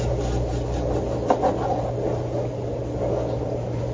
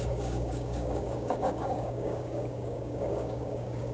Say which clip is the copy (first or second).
second